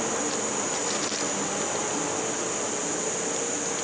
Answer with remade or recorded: recorded